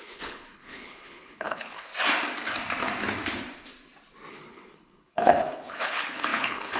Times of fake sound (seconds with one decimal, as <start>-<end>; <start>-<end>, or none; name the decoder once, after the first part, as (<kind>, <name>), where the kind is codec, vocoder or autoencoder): 0.0-1.9 (codec, HILCodec); 4.3-6.8